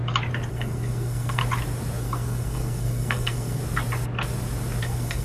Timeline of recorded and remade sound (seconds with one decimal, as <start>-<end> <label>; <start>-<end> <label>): 0.0-0.5 recorded; 0.5-1.4 remade; 1.4-2.0 recorded; 2.0-3.6 remade; 3.6-4.8 recorded; 4.8-5.2 remade